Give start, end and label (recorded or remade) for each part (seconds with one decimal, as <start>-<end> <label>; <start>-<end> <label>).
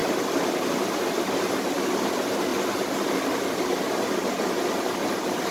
0.0-5.5 recorded